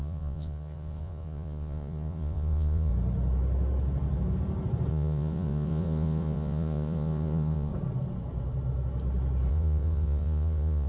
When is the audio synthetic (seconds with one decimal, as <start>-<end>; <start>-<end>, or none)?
0.0-2.9; 4.9-7.7; 9.5-10.9